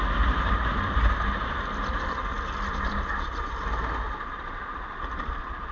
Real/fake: real